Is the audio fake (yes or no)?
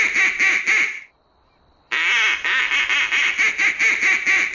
no